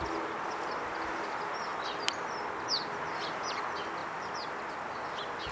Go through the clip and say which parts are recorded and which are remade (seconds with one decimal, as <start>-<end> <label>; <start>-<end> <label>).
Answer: 0.0-5.5 recorded